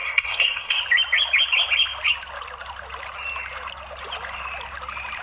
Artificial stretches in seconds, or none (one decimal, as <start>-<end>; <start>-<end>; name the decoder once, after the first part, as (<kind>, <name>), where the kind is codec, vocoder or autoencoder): 0.0-0.8 (codec, SNAC)